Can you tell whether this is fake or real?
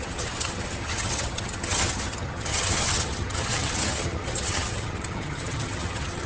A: fake